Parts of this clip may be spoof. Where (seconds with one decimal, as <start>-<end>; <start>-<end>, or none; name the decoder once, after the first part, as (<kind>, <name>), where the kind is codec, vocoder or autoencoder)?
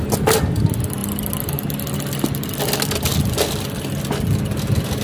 none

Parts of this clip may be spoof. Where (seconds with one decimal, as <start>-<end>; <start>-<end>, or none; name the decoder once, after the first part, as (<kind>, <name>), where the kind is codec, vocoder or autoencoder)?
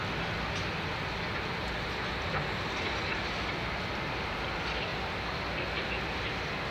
none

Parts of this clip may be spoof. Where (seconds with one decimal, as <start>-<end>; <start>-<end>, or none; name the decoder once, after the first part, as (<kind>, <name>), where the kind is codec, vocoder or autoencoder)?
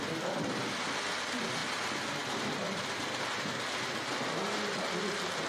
1.6-3.2 (vocoder, BigVGAN v2)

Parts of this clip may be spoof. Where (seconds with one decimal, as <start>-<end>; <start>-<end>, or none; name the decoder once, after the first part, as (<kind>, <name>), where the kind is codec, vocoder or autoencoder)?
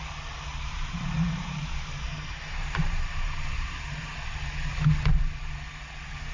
0.5-4.1 (vocoder, BigVGAN v2)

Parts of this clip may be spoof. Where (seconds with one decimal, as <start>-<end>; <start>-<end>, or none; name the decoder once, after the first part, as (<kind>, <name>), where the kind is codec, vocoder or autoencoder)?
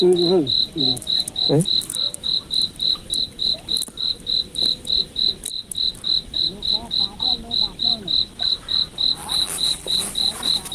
9.2-10.0 (vocoder, BigVGAN v2)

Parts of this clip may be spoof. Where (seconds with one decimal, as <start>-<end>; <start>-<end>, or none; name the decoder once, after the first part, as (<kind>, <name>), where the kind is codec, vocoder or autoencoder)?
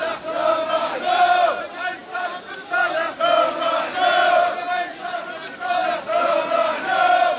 none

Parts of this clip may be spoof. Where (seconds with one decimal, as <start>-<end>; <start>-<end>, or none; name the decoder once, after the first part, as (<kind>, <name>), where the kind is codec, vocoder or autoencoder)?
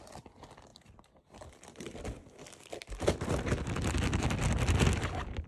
0.7-2.7 (vocoder, BigVGAN v2)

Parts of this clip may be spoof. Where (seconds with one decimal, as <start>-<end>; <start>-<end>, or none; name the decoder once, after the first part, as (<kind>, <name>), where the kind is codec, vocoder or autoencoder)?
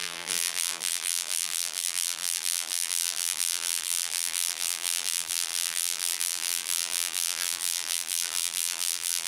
0.0-9.3 (vocoder, BigVGAN v2)